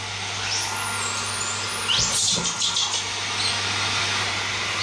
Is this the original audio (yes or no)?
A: yes